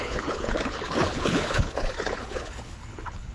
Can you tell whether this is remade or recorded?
remade